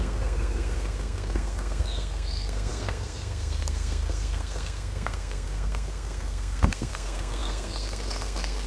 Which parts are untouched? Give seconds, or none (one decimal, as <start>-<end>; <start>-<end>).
none